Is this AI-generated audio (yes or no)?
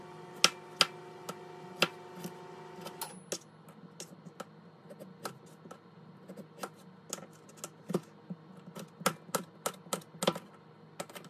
no